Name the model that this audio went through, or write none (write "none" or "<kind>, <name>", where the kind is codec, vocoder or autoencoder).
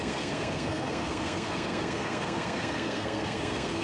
codec, SNAC